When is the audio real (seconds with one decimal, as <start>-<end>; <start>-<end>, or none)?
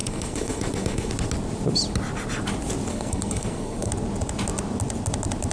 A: 1.1-2.9; 3.9-5.5